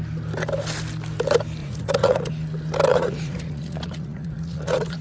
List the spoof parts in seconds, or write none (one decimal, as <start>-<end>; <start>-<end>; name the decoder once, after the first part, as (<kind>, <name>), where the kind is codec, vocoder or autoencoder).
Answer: 1.6-2.3 (vocoder, Vocos); 2.9-5.0